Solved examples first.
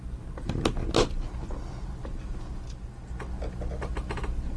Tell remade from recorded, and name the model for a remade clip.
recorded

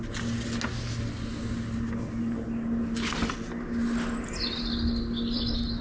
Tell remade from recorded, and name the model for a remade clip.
recorded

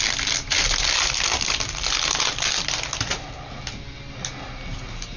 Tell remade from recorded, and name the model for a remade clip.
recorded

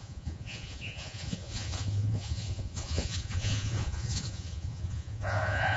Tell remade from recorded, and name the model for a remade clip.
remade, vocoder, Vocos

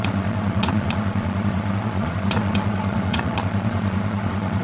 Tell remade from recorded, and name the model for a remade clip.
remade, vocoder, Vocos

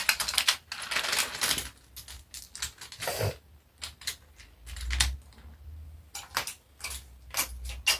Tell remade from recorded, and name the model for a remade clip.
recorded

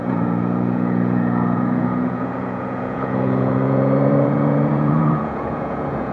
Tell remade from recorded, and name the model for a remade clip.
remade, vocoder, Vocos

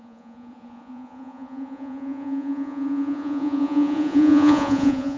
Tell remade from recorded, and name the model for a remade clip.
remade, vocoder, Vocos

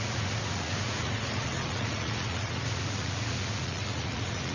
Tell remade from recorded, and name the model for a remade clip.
remade, vocoder, Vocos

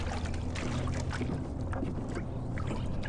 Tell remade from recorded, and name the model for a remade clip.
recorded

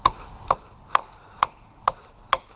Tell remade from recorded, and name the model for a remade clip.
recorded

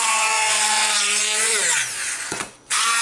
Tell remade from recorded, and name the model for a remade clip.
remade, vocoder, Vocos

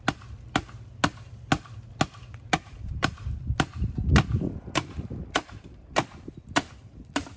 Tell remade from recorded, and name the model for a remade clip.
recorded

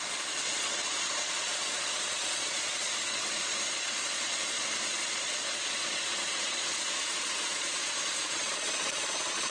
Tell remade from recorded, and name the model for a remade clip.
remade, vocoder, Vocos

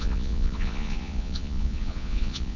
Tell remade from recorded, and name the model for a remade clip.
remade, vocoder, Vocos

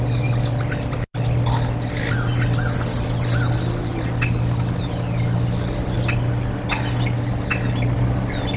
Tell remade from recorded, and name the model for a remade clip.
recorded